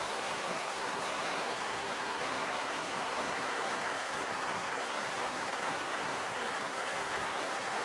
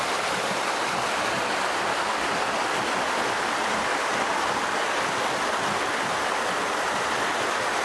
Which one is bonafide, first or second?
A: second